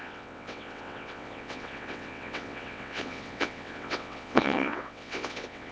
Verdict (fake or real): fake